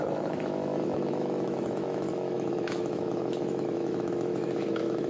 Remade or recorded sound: remade